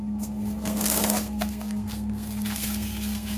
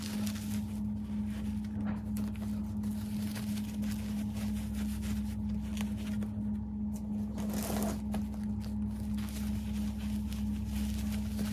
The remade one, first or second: first